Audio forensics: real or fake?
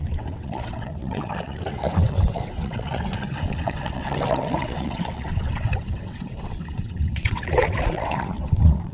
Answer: fake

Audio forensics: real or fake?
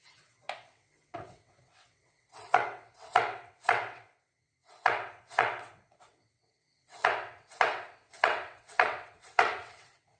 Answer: fake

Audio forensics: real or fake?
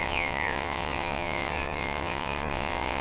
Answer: fake